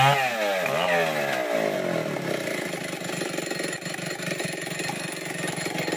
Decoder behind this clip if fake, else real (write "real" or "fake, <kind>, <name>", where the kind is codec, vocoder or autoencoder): real